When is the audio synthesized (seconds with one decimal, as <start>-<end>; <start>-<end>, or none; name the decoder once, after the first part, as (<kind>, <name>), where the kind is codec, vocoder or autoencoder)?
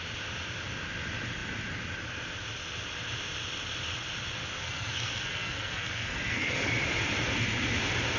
4.5-6.7 (codec, SNAC)